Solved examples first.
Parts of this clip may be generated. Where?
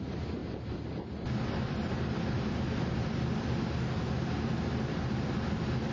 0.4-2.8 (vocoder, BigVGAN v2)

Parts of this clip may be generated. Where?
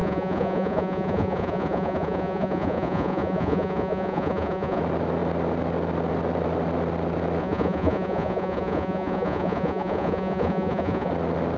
0.0-4.8 (vocoder, Vocos); 7.4-11.1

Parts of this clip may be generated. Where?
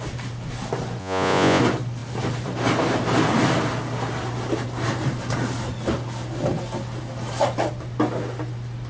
1.0-1.6 (vocoder, Vocos)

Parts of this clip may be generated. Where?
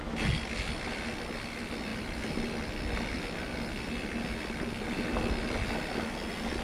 1.9-3.2 (vocoder, BigVGAN v2)